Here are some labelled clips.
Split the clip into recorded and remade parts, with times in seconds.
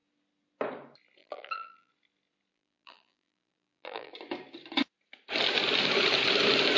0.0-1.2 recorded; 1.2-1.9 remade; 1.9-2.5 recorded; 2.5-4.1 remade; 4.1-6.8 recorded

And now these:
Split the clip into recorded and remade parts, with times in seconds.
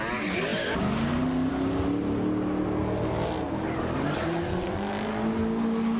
0.0-6.0 recorded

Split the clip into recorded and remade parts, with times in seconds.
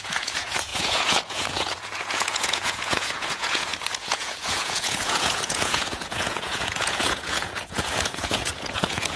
0.0-9.2 remade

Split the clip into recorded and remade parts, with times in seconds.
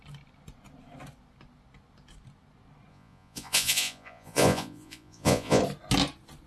0.0-2.9 recorded; 2.9-5.6 remade; 5.6-6.5 recorded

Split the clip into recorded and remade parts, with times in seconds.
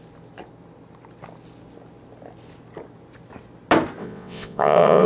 0.0-4.0 recorded; 4.0-5.1 remade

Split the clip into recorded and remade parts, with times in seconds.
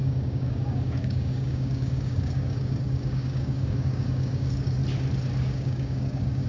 0.0-4.8 remade; 4.8-5.4 recorded; 5.4-6.5 remade